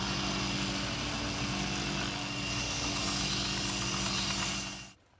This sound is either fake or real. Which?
real